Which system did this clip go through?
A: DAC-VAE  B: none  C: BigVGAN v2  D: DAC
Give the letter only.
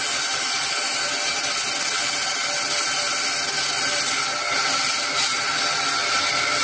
B